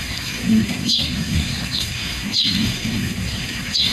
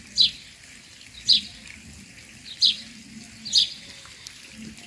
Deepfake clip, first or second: first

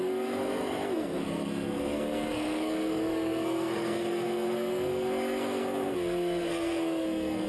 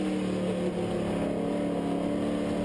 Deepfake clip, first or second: first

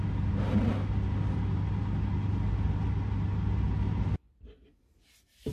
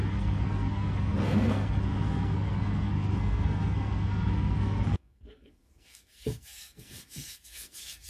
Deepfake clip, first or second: second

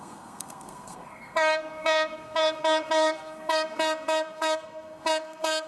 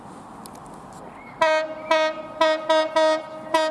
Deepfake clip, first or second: first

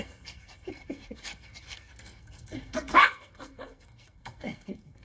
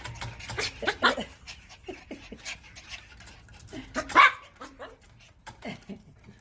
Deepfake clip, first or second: first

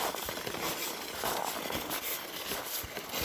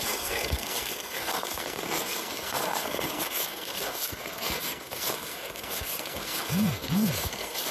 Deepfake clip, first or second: second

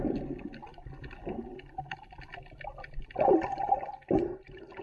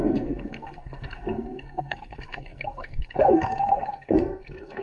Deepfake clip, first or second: second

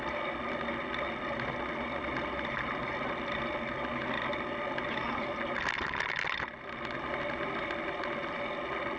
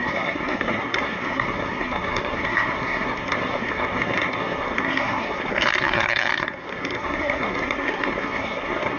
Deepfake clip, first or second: second